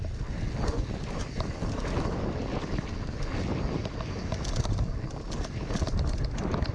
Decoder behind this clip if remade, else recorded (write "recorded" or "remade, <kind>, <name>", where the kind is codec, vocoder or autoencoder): recorded